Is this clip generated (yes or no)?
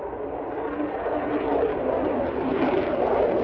no